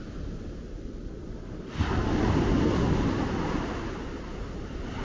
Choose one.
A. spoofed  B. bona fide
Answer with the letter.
B